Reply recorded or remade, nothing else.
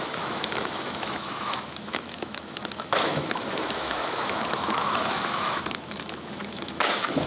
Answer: remade